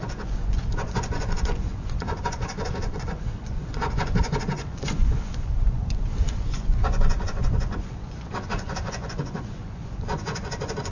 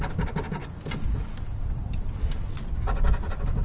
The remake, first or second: first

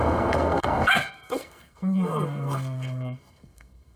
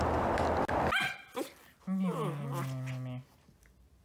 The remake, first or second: first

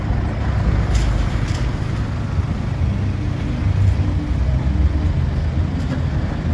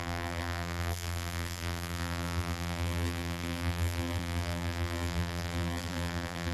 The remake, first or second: second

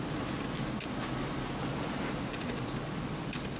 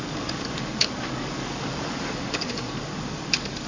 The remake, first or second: second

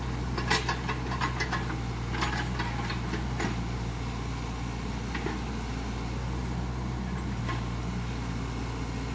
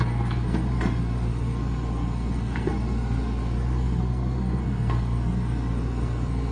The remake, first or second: second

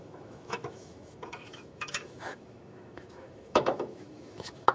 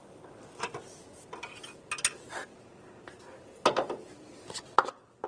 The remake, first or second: first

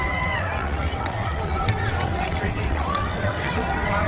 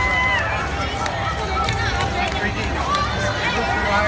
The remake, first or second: first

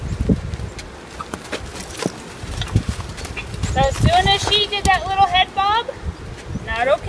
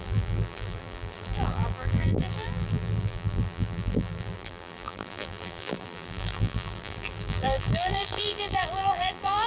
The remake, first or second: second